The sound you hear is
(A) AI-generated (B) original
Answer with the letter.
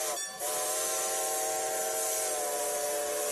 B